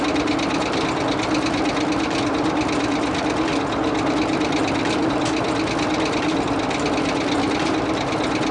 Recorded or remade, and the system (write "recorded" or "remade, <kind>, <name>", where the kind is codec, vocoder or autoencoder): recorded